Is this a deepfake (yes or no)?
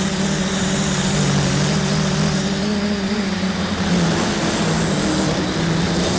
no